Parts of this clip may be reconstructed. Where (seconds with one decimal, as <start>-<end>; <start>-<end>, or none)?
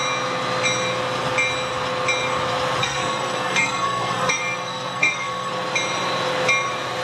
2.8-5.5